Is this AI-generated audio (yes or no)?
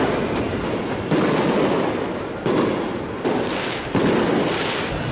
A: no